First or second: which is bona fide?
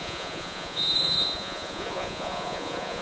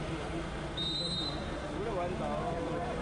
second